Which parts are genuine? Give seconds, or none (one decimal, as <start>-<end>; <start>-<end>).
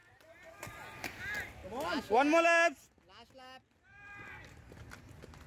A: 1.2-5.5